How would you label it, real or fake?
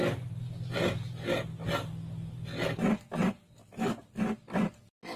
real